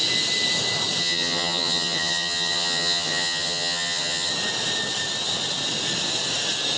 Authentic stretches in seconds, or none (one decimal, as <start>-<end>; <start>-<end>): 0.0-1.0; 4.3-6.8